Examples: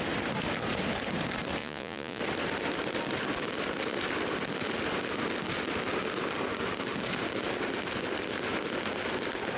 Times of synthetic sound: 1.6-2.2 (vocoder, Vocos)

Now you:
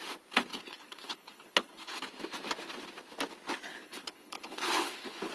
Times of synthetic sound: 0.5-2.0 (codec, HILCodec); 3.7-5.3

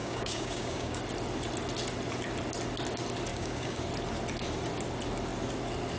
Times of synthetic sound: 0.0-1.0 (codec, DAC); 3.3-3.8

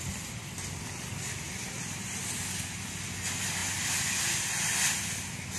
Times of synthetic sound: none

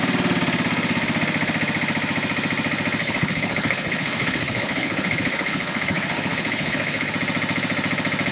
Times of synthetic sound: 3.0-7.1 (codec, HILCodec)